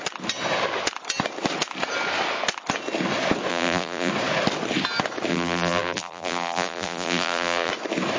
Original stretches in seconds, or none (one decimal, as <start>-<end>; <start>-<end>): 0.0-3.5; 4.1-5.3; 7.7-8.2